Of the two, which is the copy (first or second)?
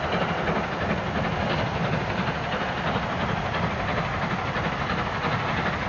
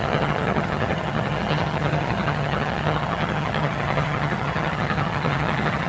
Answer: second